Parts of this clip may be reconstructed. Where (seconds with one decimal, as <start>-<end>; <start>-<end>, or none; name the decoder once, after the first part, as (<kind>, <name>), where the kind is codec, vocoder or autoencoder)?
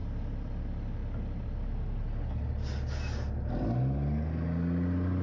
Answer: none